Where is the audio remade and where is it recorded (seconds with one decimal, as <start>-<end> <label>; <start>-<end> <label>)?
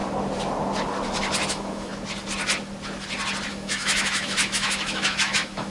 0.0-1.5 recorded; 1.5-1.9 remade; 1.9-3.5 recorded; 3.5-5.7 remade